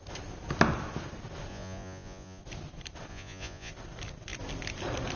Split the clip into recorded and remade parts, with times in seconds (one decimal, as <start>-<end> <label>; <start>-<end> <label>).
0.0-1.5 recorded; 1.5-2.4 remade; 2.4-3.1 recorded; 3.1-3.7 remade; 3.7-5.2 recorded